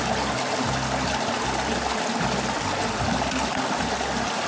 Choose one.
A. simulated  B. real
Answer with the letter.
B